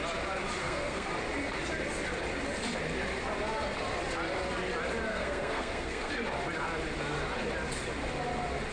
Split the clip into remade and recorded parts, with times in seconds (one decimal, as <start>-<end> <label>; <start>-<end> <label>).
0.0-0.6 recorded; 0.6-1.1 remade; 1.1-5.1 recorded; 5.1-6.1 remade; 6.1-8.7 recorded